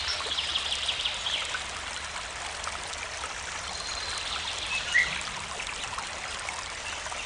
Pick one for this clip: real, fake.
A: real